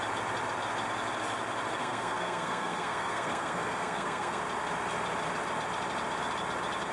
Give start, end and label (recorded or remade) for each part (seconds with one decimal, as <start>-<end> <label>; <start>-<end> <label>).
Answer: 0.0-1.8 recorded; 1.8-4.4 remade; 4.4-6.9 recorded